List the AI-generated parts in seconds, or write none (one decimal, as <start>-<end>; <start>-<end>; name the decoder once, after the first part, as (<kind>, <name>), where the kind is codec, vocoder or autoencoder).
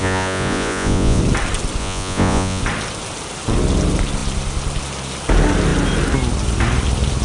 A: 0.0-1.2 (vocoder, Vocos); 1.8-2.6